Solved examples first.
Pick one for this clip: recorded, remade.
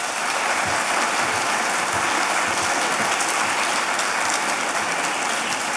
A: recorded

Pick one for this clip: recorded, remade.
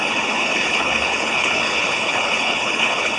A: remade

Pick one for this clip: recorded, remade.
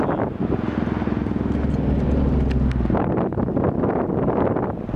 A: recorded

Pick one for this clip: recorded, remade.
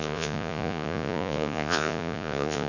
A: remade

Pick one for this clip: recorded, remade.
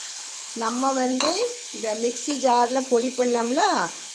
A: remade